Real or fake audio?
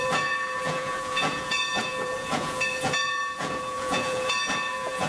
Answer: fake